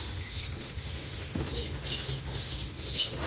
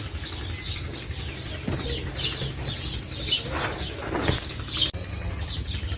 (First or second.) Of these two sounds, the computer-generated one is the first